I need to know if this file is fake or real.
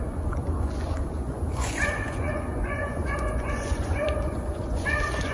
fake